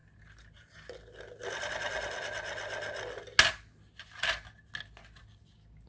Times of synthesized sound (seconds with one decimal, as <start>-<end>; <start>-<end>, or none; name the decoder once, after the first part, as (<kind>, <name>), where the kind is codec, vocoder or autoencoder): none